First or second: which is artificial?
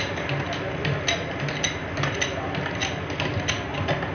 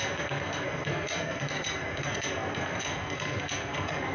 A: second